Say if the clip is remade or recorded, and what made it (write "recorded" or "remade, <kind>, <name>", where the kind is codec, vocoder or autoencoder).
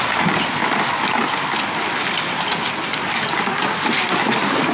recorded